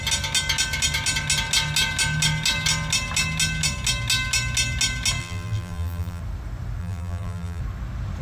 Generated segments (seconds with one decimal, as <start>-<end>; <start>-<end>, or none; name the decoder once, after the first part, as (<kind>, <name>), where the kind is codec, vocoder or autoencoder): 5.2-6.2 (vocoder, BigVGAN v2); 6.8-7.6